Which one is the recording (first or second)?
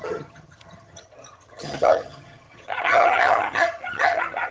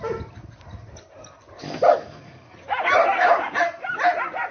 second